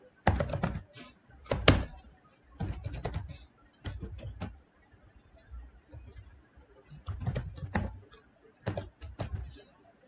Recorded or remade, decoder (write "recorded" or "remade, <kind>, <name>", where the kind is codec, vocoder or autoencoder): recorded